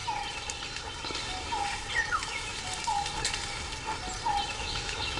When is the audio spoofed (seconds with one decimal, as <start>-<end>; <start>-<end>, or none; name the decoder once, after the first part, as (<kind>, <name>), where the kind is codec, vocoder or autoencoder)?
2.1-2.5 (autoencoder, DAC-VAE); 4.5-5.2